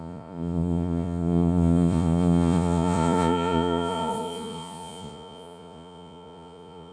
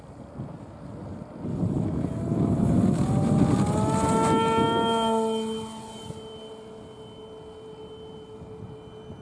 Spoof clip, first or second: first